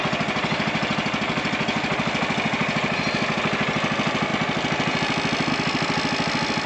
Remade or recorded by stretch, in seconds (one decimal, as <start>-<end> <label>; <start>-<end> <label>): 0.0-6.7 recorded